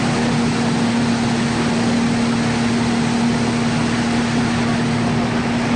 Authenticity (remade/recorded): recorded